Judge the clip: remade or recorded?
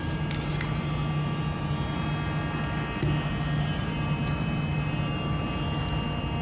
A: recorded